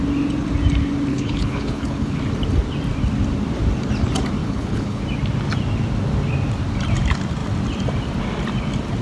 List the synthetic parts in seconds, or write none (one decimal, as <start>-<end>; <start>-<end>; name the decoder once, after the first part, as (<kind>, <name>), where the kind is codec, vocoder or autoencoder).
1.1-2.2 (codec, HILCodec); 4.4-5.0